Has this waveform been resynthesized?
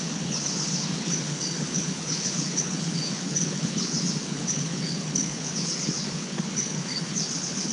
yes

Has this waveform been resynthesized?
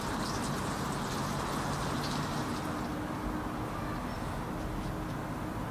no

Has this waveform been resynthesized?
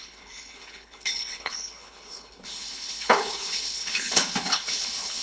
yes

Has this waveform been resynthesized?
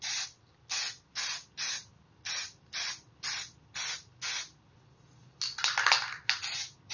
no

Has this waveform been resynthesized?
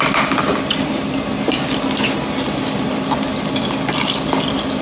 no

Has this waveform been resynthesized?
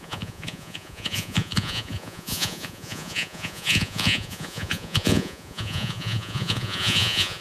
yes